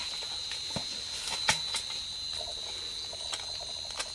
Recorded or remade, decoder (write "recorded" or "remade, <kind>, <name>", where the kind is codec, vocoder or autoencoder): recorded